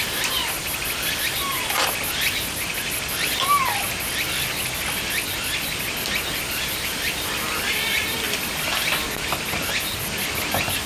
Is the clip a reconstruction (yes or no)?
no